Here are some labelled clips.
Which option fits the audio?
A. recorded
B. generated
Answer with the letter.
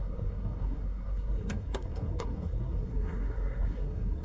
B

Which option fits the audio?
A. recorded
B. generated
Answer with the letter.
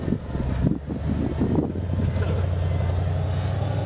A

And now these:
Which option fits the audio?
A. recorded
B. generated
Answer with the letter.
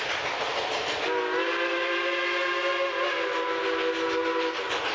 A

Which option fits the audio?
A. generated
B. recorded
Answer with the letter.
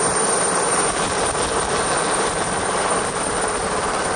A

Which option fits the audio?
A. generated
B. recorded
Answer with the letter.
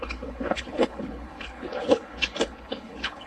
A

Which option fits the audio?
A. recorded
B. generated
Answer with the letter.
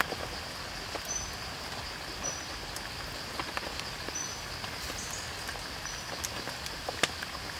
A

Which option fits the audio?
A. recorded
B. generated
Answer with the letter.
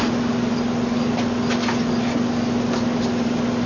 A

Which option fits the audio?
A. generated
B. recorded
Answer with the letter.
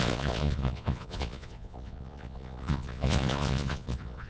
A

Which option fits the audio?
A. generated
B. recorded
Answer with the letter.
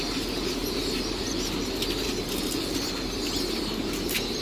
A